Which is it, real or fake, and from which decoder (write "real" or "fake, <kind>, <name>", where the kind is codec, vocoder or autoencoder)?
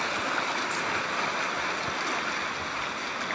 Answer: real